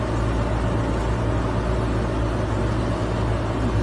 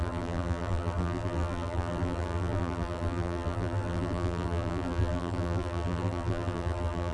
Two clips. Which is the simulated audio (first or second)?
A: second